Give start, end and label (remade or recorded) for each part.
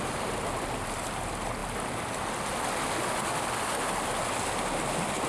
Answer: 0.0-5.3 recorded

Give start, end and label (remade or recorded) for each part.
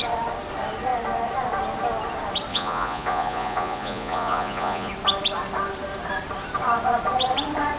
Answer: 0.0-2.5 recorded; 2.5-4.9 remade; 4.9-7.8 recorded